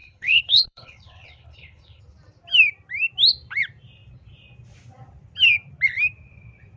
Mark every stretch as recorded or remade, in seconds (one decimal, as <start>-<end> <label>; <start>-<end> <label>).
0.0-2.0 remade; 2.0-6.8 recorded